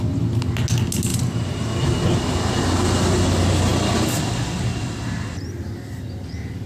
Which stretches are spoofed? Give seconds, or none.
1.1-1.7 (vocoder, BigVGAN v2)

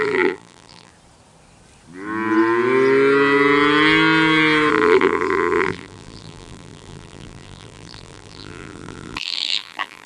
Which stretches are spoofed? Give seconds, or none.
0.0-0.9 (vocoder, BigVGAN v2); 4.7-10.1

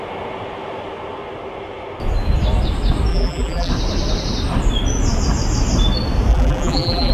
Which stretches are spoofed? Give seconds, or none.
3.1-3.7 (vocoder, BigVGAN v2); 6.3-7.1